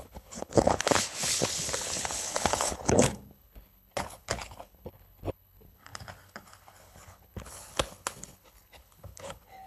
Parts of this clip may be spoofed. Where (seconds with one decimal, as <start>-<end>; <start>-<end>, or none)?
0.0-9.7